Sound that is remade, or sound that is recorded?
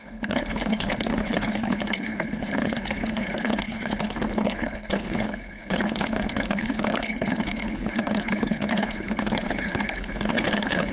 remade